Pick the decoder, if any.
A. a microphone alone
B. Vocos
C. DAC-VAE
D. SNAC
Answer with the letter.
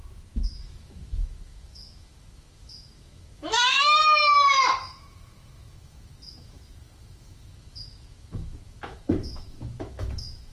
C